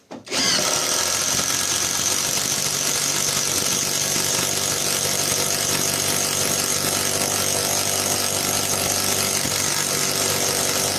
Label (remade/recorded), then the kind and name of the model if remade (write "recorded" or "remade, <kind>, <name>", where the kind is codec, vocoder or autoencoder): recorded